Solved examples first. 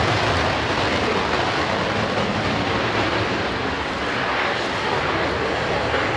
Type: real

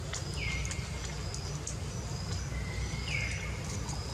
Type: real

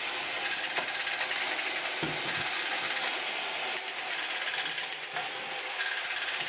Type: real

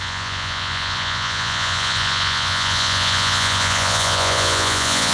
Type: fake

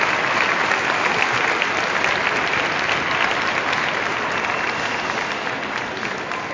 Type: real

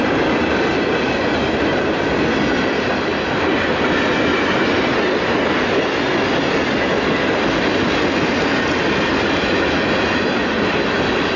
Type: real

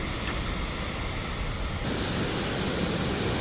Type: real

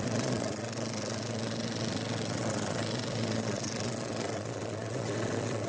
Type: fake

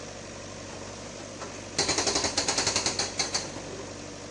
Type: real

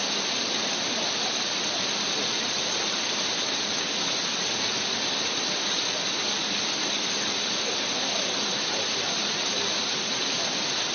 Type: real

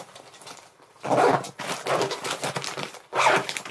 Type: real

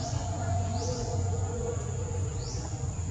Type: fake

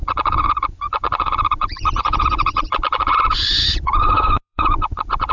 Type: fake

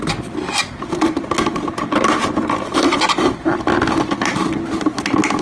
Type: real